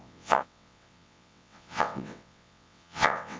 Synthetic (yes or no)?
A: yes